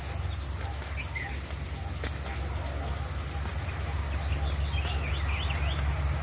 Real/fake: real